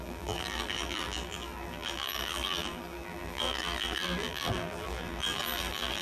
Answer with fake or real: fake